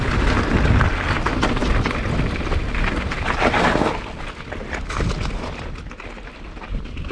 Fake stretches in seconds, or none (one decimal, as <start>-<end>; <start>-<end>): none